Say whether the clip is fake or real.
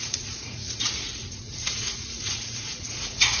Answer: fake